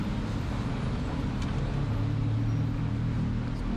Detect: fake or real real